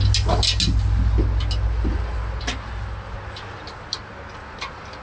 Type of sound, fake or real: real